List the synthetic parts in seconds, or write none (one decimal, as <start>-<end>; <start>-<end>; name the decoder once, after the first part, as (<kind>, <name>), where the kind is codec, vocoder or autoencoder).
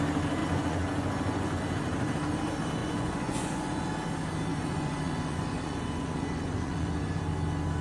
0.4-1.6 (vocoder, Vocos); 2.8-3.9; 4.5-7.2